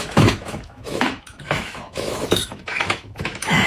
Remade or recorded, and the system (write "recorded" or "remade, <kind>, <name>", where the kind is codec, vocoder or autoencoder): remade, autoencoder, DAC-VAE